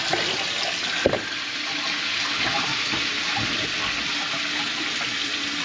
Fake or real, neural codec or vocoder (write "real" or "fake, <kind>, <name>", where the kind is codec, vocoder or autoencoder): real